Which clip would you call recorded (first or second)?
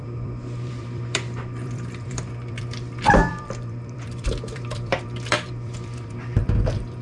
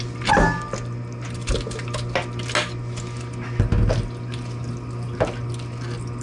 second